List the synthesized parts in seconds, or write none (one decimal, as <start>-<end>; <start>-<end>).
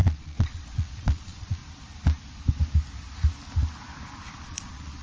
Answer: 0.0-1.6; 4.4-5.0